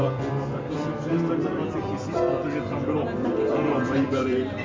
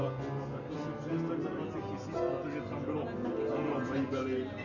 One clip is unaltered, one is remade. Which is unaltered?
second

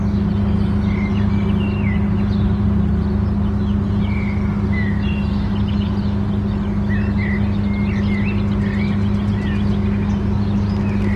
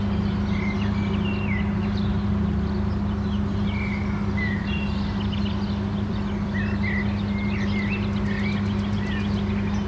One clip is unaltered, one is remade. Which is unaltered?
first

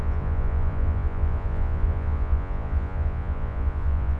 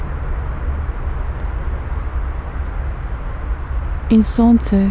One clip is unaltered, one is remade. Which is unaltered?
second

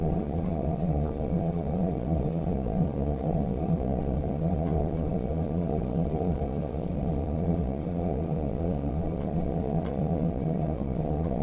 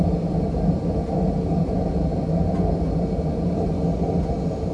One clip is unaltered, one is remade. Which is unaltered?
second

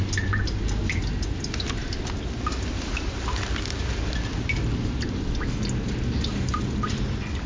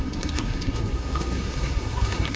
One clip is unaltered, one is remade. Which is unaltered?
first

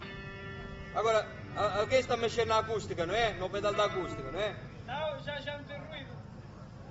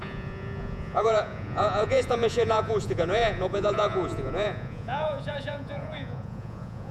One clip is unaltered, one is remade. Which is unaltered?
first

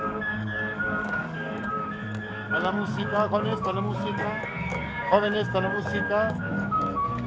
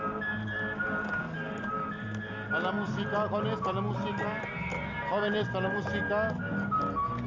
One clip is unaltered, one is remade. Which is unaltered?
second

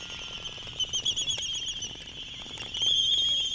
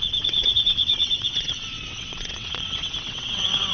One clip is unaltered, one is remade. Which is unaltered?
first